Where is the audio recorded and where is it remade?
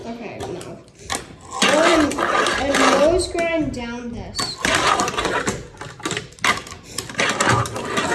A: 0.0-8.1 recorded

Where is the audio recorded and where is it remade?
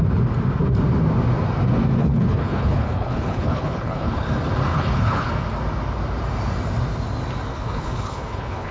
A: 0.0-2.0 recorded; 2.0-4.3 remade; 4.3-4.7 recorded; 4.7-5.3 remade; 5.3-7.5 recorded; 7.5-8.7 remade